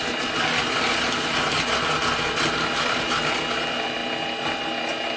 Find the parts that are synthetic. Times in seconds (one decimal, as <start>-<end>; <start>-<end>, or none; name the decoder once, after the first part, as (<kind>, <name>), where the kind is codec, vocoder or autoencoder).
none